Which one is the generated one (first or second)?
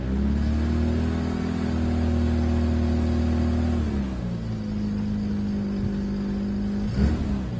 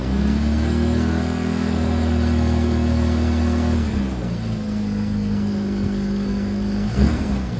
second